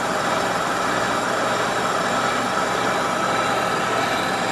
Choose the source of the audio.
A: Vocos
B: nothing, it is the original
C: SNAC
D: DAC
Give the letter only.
B